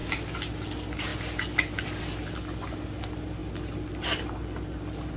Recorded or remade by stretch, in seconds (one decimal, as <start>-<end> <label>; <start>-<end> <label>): 0.0-5.2 recorded